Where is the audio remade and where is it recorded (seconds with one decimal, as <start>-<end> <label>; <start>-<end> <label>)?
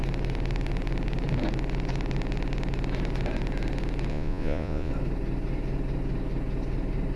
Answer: 0.0-4.1 recorded; 4.1-4.9 remade; 4.9-7.2 recorded